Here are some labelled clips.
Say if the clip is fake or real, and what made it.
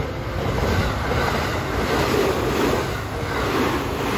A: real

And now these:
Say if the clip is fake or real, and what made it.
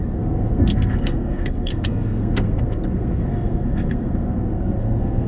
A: fake, codec, SNAC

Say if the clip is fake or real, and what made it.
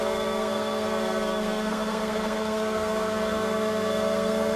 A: fake, codec, SNAC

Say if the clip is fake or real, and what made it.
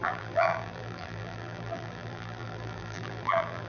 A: fake, vocoder, BigVGAN v2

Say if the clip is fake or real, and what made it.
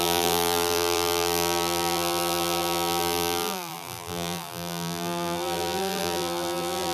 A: fake, vocoder, BigVGAN v2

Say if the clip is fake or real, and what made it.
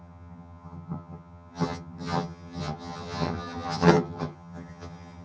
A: fake, vocoder, HiFi-GAN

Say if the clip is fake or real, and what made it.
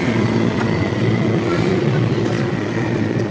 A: fake, vocoder, Vocos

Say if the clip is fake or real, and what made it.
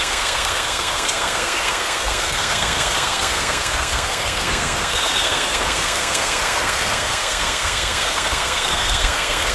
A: fake, codec, SNAC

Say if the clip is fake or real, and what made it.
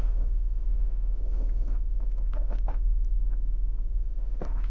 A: fake, autoencoder, DAC-VAE